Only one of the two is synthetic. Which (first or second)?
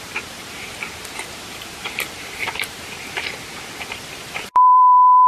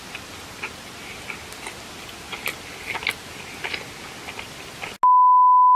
first